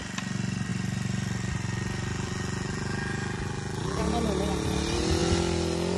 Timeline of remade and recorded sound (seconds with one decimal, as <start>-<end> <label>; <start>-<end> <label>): 0.0-2.1 recorded; 2.1-4.0 remade; 4.0-6.0 recorded